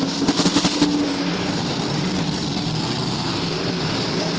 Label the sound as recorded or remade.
recorded